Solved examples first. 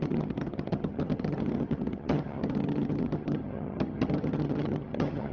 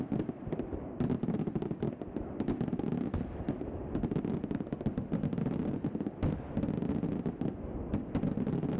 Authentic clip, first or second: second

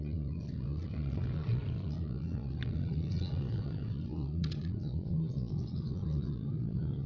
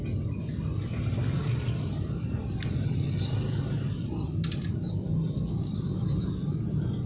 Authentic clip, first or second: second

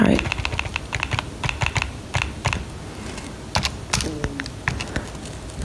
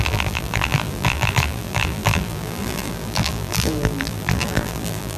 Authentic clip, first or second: first